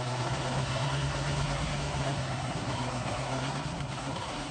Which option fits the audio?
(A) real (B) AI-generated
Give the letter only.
B